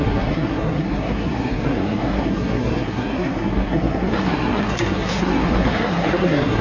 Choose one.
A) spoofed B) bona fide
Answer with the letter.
A